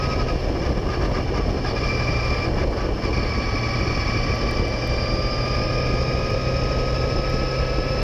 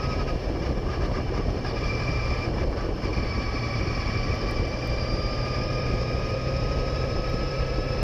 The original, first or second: first